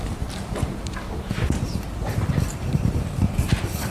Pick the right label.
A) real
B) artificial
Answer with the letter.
B